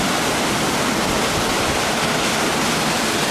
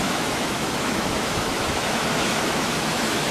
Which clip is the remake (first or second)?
second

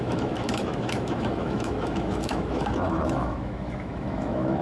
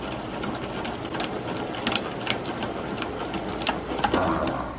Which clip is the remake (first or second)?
first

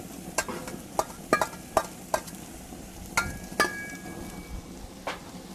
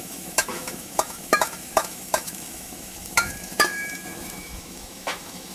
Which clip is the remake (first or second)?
second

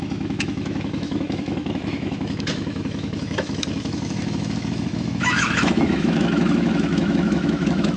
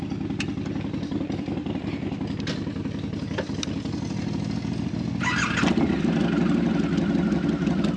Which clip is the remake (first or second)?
first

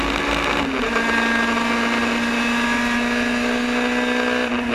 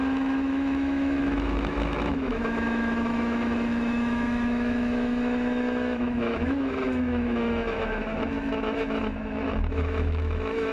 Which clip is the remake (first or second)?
second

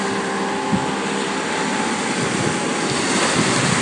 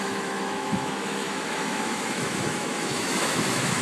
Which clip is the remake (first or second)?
second